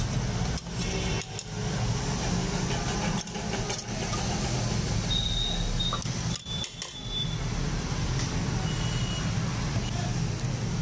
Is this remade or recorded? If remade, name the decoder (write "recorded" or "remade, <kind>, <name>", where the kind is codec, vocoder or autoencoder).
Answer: recorded